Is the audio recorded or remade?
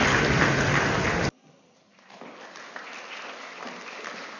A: recorded